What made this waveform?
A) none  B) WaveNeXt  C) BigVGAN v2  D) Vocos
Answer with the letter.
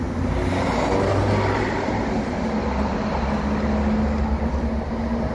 A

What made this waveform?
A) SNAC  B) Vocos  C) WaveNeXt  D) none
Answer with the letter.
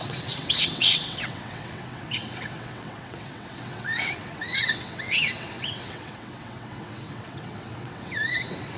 C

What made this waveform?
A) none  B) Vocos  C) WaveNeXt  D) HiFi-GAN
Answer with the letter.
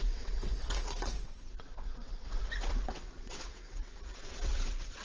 C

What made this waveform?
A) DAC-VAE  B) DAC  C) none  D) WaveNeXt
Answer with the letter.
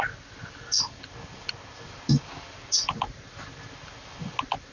C